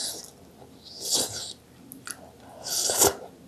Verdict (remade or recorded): recorded